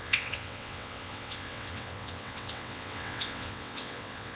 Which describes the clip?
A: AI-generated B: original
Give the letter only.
A